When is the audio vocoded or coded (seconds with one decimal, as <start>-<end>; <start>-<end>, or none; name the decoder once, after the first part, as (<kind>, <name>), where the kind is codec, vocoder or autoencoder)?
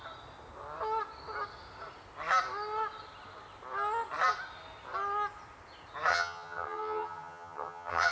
6.1-8.1 (vocoder, HiFi-GAN)